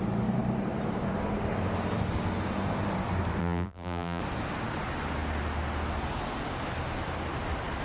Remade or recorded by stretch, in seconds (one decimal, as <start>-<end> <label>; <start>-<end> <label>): 0.0-3.4 recorded; 3.4-4.2 remade; 4.2-7.8 recorded